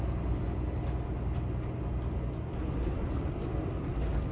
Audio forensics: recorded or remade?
recorded